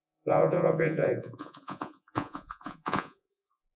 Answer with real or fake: fake